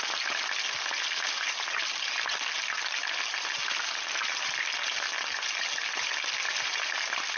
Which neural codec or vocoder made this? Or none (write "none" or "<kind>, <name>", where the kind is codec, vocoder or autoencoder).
none